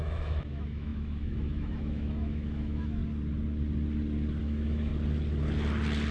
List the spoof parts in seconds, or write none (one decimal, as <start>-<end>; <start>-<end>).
0.0-3.0; 4.4-4.9